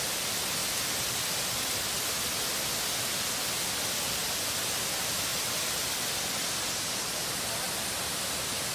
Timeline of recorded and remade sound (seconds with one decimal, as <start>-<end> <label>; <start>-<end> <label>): 0.0-8.7 recorded